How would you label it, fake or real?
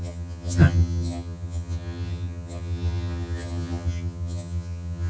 fake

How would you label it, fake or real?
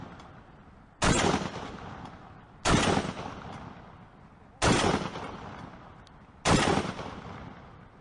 real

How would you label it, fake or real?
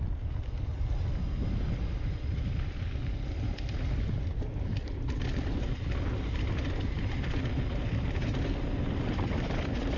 real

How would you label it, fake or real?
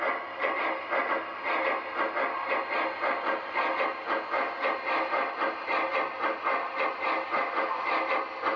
real